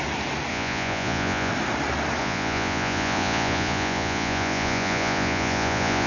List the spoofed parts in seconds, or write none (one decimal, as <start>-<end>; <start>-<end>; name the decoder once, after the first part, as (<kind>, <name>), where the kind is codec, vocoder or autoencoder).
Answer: 0.5-1.5 (vocoder, Vocos); 2.2-6.1

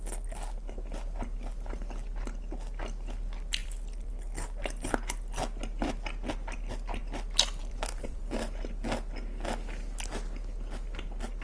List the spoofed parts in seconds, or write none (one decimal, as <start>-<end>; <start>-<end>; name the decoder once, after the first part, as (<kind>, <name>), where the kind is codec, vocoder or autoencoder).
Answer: 3.6-4.1 (vocoder, BigVGAN v2); 7.6-8.2

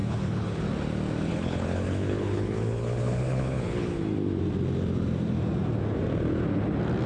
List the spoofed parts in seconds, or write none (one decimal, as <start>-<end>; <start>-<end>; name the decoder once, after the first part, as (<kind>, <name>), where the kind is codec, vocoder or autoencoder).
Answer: 0.0-0.6 (codec, HILCodec); 1.3-4.0

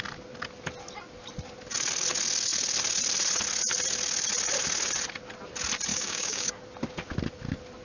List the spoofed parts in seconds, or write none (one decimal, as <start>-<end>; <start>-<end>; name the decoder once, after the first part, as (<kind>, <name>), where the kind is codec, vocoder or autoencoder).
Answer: 5.9-6.5 (codec, DAC)

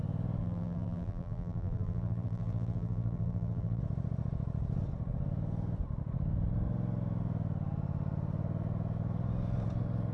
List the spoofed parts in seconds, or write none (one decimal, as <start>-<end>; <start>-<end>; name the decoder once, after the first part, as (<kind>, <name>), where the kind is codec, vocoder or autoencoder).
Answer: 0.4-3.8 (vocoder, BigVGAN v2)